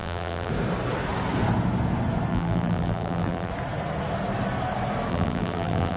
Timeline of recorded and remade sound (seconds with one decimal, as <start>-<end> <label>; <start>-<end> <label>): 0.0-0.5 remade; 0.5-2.3 recorded; 2.3-3.5 remade; 3.5-5.1 recorded; 5.1-6.0 remade